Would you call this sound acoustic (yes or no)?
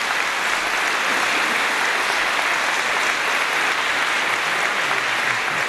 yes